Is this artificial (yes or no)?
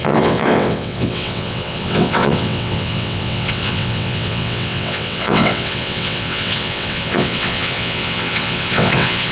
yes